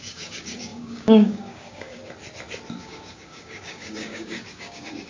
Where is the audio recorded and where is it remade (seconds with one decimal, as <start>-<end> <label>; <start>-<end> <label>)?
0.0-2.0 remade; 2.0-2.8 recorded; 2.8-5.1 remade